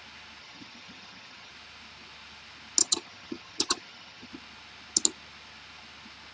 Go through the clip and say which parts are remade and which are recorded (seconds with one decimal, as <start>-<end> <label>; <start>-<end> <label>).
0.0-0.4 recorded; 0.4-1.5 remade; 1.5-2.8 recorded; 2.8-4.3 remade; 4.3-6.3 recorded